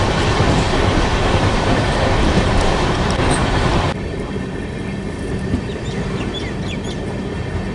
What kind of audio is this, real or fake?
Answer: fake